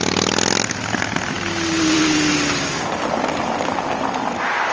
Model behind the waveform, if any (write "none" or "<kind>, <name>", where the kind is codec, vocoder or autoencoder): none